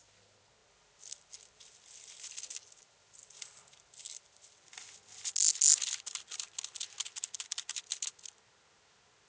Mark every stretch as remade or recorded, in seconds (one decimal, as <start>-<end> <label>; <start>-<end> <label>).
0.0-9.3 recorded